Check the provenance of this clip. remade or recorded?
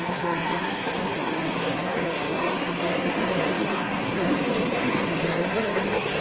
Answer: remade